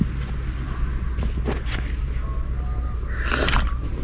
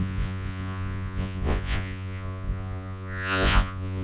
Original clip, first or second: first